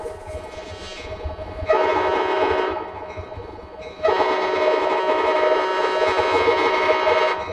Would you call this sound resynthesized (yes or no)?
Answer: yes